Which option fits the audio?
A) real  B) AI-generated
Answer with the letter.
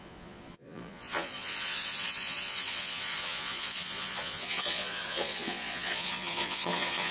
B